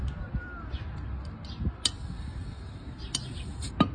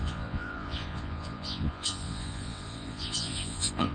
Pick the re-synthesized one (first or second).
second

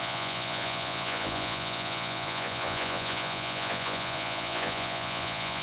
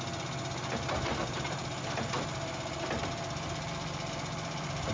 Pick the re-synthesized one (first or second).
first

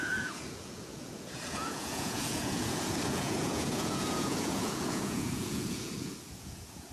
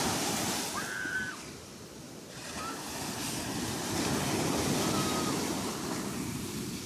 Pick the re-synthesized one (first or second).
first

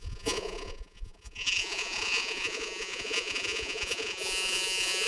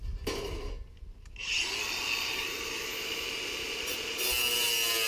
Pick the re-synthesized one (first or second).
first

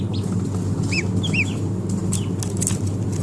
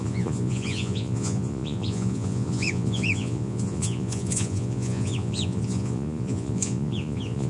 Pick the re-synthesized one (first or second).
second